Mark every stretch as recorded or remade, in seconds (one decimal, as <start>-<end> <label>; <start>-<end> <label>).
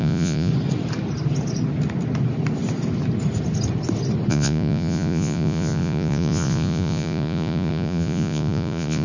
0.0-0.5 remade; 0.5-4.3 recorded; 4.3-9.0 remade